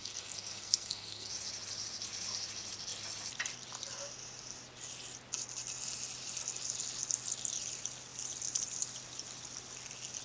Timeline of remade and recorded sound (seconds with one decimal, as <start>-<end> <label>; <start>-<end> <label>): 0.0-1.3 remade; 1.3-10.2 recorded